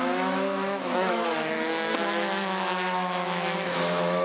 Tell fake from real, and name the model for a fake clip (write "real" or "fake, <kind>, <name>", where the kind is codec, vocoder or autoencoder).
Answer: fake, autoencoder, DAC-VAE